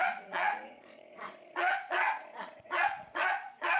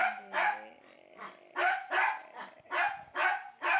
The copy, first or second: first